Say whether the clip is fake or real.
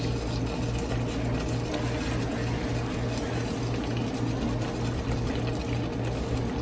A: real